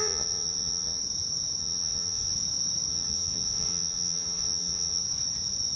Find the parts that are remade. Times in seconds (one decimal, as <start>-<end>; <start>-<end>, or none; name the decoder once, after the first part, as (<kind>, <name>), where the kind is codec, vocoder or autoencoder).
0.0-1.0 (vocoder, Vocos); 1.6-2.3; 2.9-5.0